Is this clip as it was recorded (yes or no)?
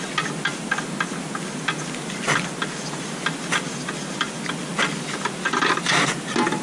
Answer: yes